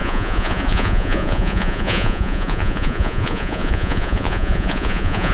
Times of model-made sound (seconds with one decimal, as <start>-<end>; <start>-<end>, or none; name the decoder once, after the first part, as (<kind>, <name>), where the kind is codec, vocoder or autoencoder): 0.0-5.3 (vocoder, Vocos)